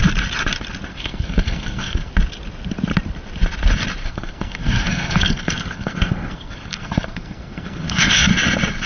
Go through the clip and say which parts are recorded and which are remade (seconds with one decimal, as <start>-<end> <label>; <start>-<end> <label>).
0.0-0.9 recorded; 0.9-2.1 remade; 2.1-4.0 recorded; 4.0-8.3 remade; 8.3-8.9 recorded